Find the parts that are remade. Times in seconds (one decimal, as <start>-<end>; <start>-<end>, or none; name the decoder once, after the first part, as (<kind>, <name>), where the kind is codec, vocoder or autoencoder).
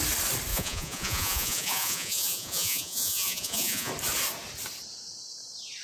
0.5-3.9 (vocoder, Vocos)